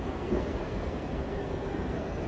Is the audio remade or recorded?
remade